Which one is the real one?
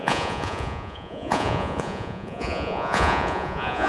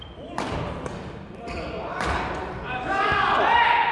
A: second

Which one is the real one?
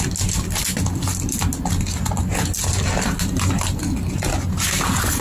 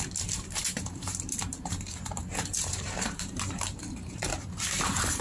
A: first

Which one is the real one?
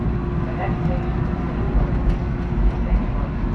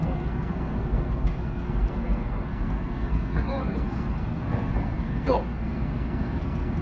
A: first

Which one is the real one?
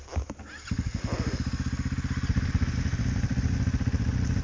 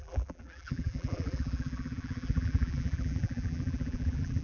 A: first